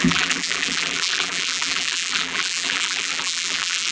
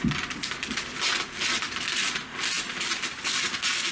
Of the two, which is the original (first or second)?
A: second